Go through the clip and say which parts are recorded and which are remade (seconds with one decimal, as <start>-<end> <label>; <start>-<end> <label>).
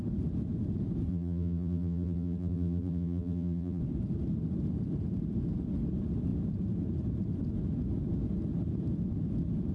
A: 0.0-1.1 recorded; 1.1-3.8 remade; 3.8-9.7 recorded